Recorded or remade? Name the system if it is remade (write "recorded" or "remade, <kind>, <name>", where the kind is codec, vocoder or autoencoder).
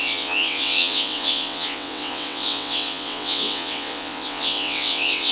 remade, vocoder, WaveNeXt